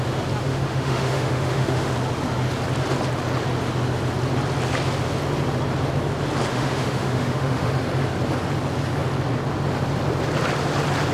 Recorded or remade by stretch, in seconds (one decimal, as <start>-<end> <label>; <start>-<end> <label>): 0.0-0.4 recorded; 0.4-1.9 remade; 1.9-6.5 recorded; 6.5-7.7 remade; 7.7-11.1 recorded